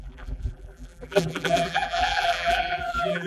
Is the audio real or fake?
fake